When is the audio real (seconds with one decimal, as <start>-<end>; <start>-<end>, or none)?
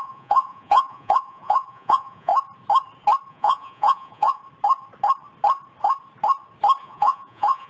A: 2.3-3.3; 4.4-6.8